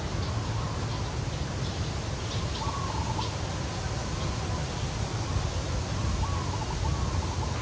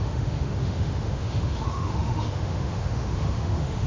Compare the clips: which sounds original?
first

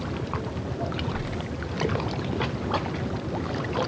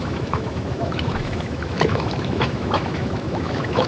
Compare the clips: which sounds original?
first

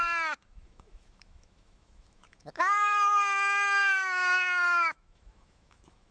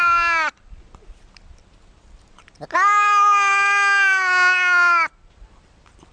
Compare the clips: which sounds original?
second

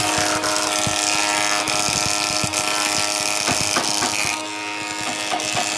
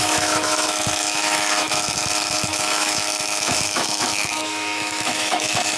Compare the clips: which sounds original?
first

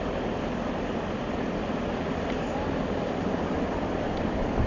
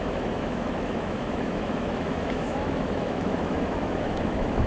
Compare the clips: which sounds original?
first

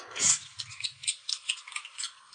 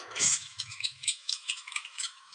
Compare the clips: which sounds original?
first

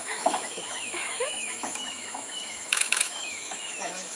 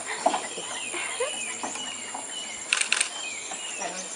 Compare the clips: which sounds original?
second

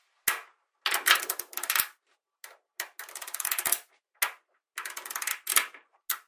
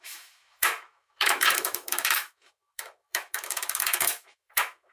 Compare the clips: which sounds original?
first